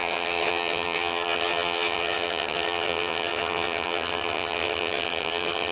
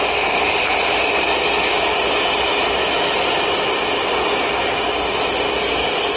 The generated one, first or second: first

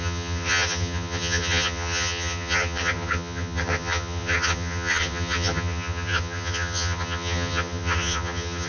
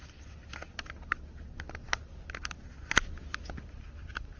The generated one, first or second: first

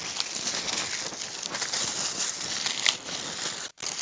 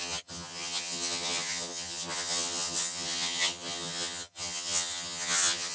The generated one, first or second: second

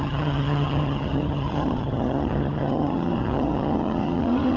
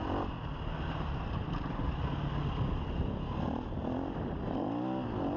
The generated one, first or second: first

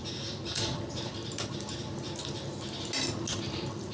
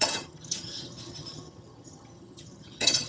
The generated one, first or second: second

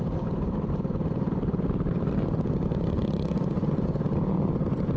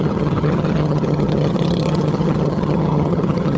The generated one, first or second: second